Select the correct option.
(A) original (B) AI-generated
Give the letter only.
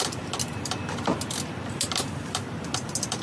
A